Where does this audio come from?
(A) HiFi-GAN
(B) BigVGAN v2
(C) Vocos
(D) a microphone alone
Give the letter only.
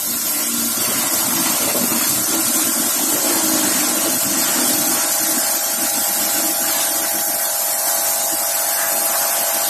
D